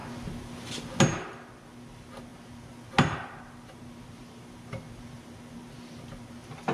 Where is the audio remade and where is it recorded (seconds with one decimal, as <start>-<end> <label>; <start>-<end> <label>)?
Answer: 0.0-6.7 recorded